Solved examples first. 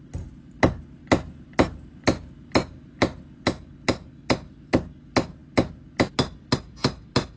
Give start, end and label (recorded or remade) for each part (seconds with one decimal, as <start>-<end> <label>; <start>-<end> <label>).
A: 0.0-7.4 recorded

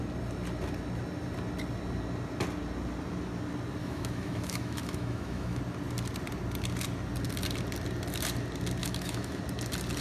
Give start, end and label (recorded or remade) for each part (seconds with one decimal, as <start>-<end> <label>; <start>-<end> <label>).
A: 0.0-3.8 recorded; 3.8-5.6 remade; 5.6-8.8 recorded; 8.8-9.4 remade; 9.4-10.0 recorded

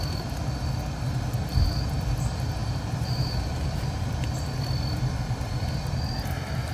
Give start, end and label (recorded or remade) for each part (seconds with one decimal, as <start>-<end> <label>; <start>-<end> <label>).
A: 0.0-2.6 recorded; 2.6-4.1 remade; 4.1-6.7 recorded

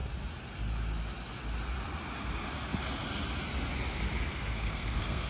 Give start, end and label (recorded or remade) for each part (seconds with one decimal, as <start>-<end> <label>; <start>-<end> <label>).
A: 0.0-4.3 recorded; 4.3-5.3 remade